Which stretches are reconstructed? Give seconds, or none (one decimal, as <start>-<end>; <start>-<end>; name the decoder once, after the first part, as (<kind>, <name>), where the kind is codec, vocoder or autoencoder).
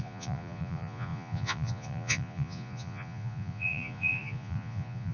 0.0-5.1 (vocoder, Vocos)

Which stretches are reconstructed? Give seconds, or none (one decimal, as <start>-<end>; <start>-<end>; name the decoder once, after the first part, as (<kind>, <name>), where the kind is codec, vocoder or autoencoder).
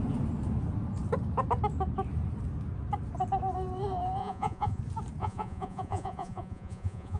4.2-4.8 (vocoder, Vocos); 5.2-7.2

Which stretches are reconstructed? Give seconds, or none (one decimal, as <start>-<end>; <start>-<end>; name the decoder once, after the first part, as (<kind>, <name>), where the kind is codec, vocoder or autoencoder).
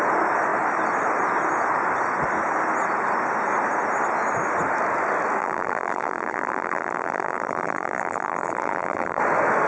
5.4-9.2 (vocoder, BigVGAN v2)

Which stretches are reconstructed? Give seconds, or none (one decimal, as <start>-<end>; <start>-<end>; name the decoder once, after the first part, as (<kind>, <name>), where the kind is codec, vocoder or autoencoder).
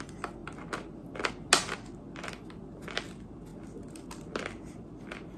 none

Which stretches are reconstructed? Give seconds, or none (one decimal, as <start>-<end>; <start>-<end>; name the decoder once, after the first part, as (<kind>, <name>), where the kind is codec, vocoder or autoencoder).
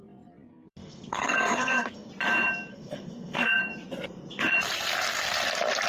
0.5-2.1 (codec, SNAC); 2.7-3.6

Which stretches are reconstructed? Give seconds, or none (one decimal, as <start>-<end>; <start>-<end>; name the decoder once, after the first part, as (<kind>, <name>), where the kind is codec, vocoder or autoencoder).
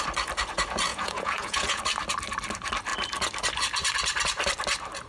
0.9-1.8 (vocoder, Vocos)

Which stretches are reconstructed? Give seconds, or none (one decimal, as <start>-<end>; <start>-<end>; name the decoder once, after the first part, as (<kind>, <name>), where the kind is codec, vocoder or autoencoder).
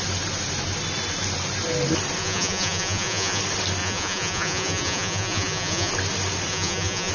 2.2-3.4 (vocoder, Vocos); 3.8-5.9; 6.5-7.1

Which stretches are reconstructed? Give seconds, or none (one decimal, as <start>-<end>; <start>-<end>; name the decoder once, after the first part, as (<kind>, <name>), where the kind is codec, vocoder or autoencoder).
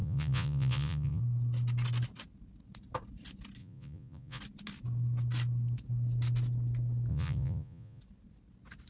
0.0-1.2 (vocoder, Vocos); 3.6-4.4; 7.1-8.0